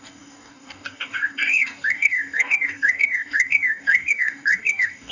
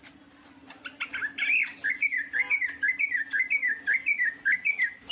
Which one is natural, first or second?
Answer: second